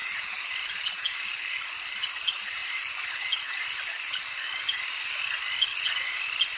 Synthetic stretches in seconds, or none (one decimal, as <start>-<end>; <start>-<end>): none